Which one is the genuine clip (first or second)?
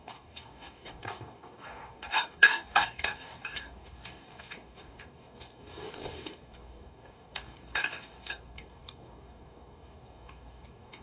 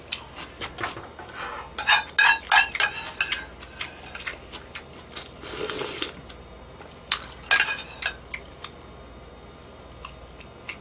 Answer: second